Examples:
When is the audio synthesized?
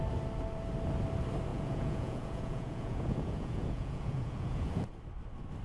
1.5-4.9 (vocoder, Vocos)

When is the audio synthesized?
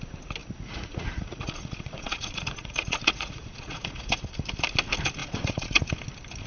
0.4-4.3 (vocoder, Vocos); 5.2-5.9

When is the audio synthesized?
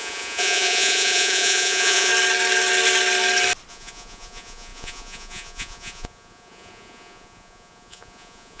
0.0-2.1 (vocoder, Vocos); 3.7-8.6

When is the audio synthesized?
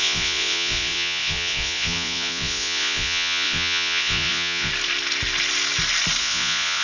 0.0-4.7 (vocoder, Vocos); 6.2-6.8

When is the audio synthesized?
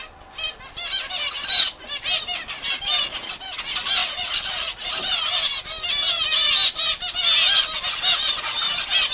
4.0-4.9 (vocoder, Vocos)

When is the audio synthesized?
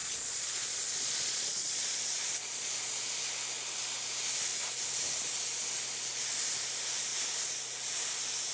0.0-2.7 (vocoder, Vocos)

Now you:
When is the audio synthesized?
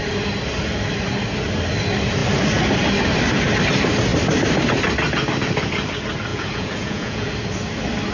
6.3-7.3 (vocoder, Vocos)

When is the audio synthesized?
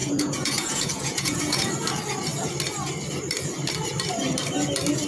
0.0-1.7 (vocoder, Vocos)